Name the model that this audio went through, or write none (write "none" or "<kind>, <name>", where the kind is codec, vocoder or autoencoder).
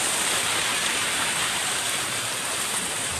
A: vocoder, BigVGAN v2